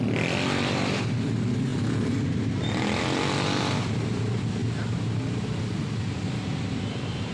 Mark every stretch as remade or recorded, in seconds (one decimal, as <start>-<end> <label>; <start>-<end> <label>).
0.0-4.6 remade; 4.6-5.6 recorded; 5.6-7.3 remade